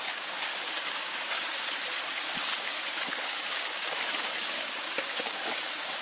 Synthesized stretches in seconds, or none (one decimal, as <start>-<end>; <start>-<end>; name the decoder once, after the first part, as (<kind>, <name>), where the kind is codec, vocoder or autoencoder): 0.0-1.6 (codec, DAC); 2.5-6.0